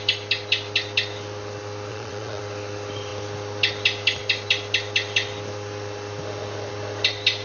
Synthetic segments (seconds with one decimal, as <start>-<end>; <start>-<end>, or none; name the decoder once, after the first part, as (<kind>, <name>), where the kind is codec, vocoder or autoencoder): 1.9-2.4 (vocoder, Vocos)